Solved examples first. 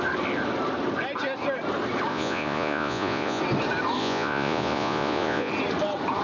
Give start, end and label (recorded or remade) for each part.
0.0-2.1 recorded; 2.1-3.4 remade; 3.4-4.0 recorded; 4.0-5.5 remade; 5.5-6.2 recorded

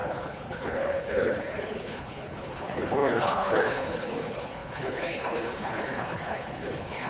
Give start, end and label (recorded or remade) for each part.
0.0-7.1 remade

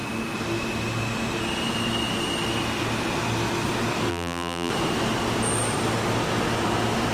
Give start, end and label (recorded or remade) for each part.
0.0-4.1 recorded; 4.1-4.7 remade; 4.7-7.1 recorded

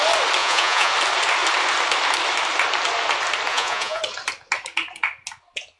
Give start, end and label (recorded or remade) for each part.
0.0-0.4 recorded; 0.4-0.9 remade; 0.9-3.5 recorded; 3.5-4.0 remade; 4.0-5.8 recorded

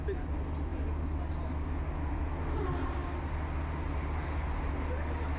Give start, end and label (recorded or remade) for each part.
0.0-5.4 recorded

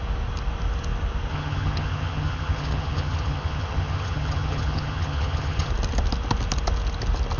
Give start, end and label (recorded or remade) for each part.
0.0-1.3 recorded; 1.3-5.7 remade; 5.7-7.4 recorded

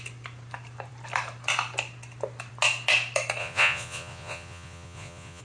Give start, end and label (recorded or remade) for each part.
0.0-3.4 recorded; 3.4-5.4 remade